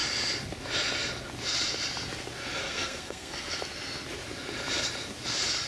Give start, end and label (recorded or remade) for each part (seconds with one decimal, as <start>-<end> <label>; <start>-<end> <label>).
0.0-2.6 recorded; 2.6-3.6 remade; 3.6-5.7 recorded